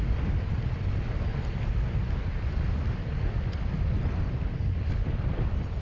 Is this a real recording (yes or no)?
yes